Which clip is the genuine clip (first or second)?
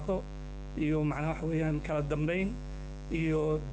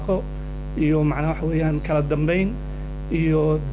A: second